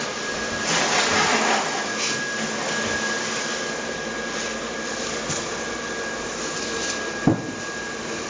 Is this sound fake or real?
real